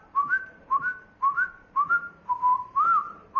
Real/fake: fake